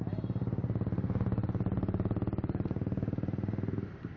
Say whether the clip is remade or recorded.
remade